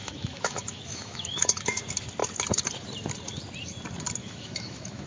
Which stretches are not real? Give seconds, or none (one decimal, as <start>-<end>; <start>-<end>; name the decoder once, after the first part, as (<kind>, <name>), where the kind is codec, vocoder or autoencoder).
0.0-1.8 (autoencoder, DAC-VAE); 4.2-5.1